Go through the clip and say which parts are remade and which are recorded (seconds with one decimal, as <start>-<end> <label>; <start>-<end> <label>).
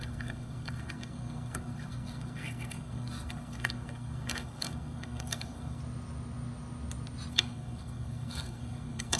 0.0-5.8 remade; 5.8-7.3 recorded; 7.3-9.2 remade